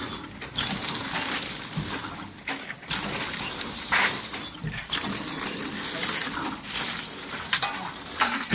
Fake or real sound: real